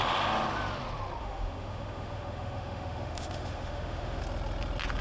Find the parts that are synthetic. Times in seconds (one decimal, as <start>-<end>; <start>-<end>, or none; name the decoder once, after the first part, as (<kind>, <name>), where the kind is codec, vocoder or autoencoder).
1.2-4.2 (autoencoder, DAC-VAE)

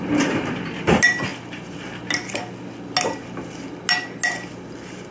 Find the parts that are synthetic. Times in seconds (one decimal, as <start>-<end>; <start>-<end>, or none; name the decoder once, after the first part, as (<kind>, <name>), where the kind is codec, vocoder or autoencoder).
none

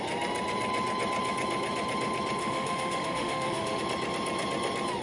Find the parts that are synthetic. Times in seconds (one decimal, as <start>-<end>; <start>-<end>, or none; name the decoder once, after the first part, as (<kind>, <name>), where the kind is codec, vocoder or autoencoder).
2.4-3.8 (autoencoder, DAC-VAE)

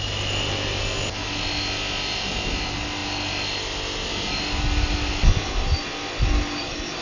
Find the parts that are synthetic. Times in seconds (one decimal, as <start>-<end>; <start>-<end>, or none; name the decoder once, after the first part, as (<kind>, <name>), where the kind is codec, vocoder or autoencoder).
none

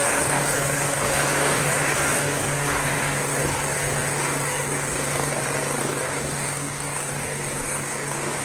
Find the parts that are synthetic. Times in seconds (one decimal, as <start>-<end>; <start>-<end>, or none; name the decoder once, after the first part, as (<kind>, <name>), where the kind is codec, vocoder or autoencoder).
0.0-5.3 (codec, DAC); 5.8-8.4

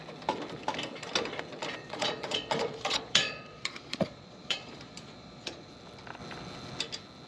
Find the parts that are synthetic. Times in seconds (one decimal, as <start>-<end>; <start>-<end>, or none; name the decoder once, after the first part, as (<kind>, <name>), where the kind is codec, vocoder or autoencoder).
1.8-5.7 (vocoder, Vocos)

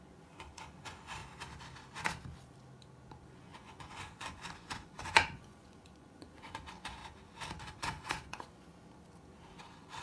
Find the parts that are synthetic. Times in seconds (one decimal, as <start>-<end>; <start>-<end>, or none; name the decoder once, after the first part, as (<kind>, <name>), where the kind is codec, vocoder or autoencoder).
0.0-1.2 (vocoder, Vocos); 3.3-7.0; 7.6-8.7; 9.6-10.0